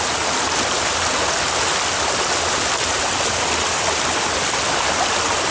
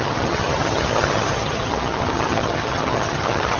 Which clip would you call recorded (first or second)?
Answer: first